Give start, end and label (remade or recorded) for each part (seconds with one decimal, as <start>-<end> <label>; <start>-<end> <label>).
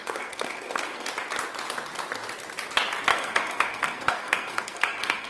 0.0-1.1 remade; 1.1-3.1 recorded; 3.1-5.3 remade